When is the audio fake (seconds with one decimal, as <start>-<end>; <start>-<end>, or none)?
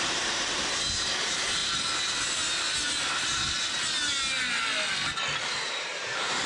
0.0-1.6; 5.5-6.5